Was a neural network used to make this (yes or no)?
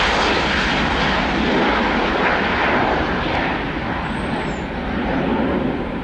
no